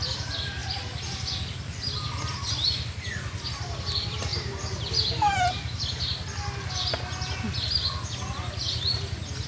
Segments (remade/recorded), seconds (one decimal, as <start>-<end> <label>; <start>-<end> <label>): 0.0-9.5 recorded